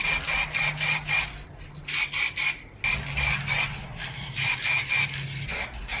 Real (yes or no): yes